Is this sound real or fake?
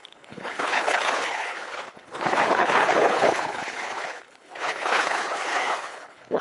fake